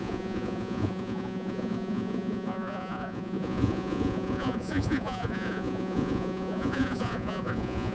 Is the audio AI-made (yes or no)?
yes